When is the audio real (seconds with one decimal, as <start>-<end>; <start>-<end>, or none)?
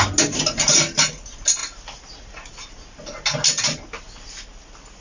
0.0-5.0